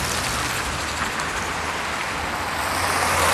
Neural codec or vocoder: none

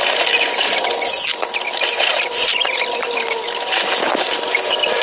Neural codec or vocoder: none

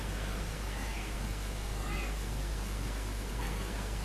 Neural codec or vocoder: codec, SNAC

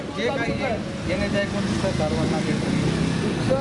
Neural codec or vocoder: none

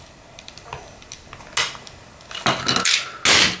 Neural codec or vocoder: none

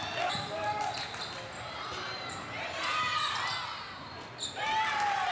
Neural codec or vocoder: none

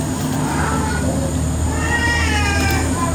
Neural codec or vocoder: none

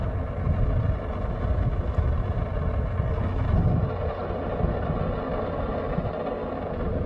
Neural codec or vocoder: none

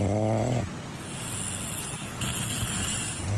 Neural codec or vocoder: none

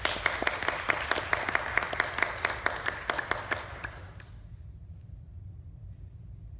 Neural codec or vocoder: none